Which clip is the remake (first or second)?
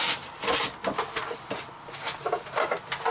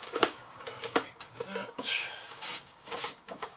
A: second